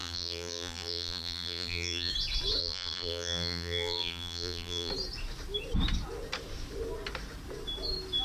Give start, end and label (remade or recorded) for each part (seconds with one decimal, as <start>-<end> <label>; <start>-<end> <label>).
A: 0.0-2.1 remade; 2.1-2.6 recorded; 2.6-4.9 remade; 4.9-8.2 recorded